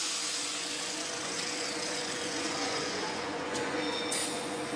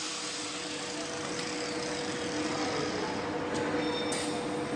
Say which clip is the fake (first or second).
first